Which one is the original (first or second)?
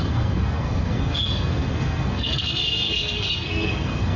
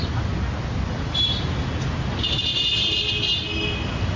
second